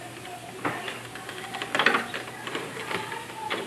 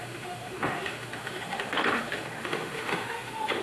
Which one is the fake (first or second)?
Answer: second